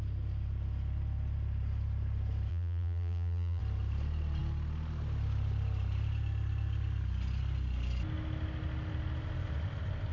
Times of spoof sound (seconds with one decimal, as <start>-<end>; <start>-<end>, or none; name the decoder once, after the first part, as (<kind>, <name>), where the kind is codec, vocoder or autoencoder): 2.5-3.6 (vocoder, BigVGAN v2)